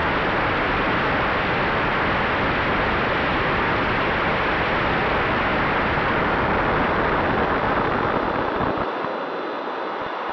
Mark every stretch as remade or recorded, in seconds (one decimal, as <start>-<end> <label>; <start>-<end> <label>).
0.0-10.3 recorded